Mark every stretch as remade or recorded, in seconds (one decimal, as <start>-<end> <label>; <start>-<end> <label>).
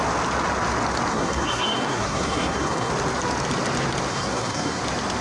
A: 0.0-1.1 recorded; 1.1-2.9 remade; 2.9-4.1 recorded; 4.1-4.8 remade; 4.8-5.2 recorded